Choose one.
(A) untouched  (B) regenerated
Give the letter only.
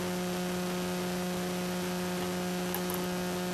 A